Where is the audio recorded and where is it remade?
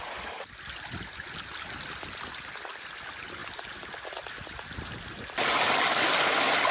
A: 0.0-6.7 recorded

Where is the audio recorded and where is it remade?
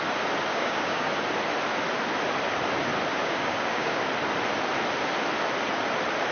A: 0.0-0.5 recorded; 0.5-1.1 remade; 1.1-3.2 recorded; 3.2-4.0 remade; 4.0-6.3 recorded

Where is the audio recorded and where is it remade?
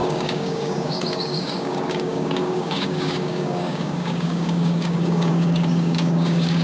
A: 0.0-6.6 remade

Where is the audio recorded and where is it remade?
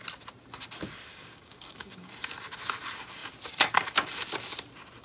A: 0.0-1.1 recorded; 1.1-2.1 remade; 2.1-5.0 recorded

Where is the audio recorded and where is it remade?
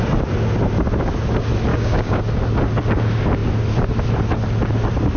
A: 0.0-1.7 recorded; 1.7-2.2 remade; 2.2-5.2 recorded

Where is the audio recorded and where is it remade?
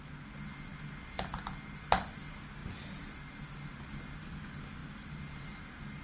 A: 0.0-6.0 recorded